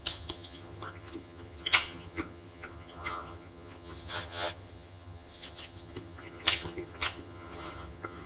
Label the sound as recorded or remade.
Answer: remade